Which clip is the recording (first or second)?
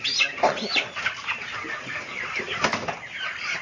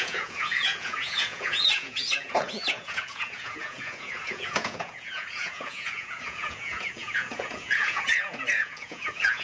first